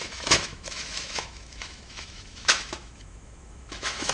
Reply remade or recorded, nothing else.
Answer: remade